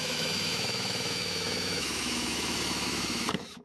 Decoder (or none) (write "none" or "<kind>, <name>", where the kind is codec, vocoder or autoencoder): autoencoder, DAC-VAE